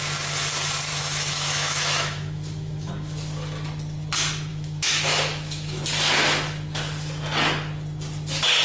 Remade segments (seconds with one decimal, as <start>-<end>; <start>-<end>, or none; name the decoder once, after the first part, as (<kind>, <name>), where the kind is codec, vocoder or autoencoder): 0.9-2.9 (autoencoder, DAC-VAE); 4.5-5.8